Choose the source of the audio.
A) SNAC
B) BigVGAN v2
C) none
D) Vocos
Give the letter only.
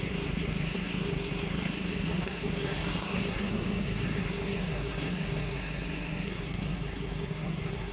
A